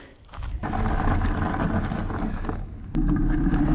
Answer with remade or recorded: recorded